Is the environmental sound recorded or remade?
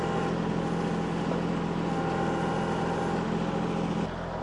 recorded